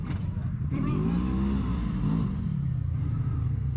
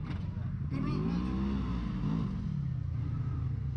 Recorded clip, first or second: second